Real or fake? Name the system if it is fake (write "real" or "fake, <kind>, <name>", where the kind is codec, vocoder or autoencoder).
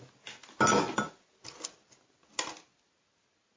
real